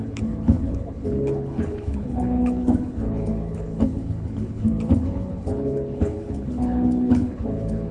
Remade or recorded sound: remade